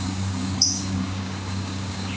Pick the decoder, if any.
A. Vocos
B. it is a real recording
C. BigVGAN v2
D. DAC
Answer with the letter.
D